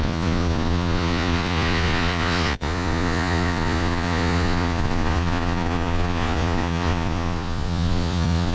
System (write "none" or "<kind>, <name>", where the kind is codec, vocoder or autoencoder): vocoder, Vocos